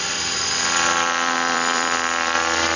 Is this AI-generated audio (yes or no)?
yes